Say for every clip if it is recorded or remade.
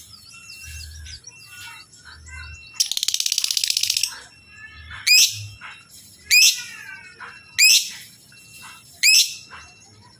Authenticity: recorded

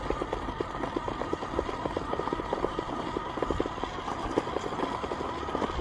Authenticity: recorded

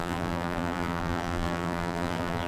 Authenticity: remade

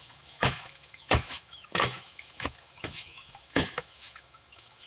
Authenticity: remade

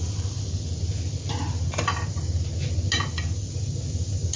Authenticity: recorded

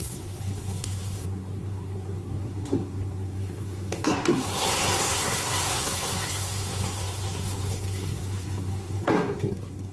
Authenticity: remade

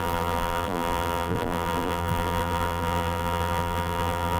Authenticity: remade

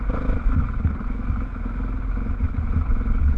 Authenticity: recorded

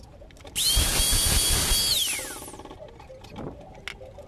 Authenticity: recorded